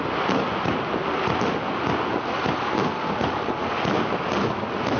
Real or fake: real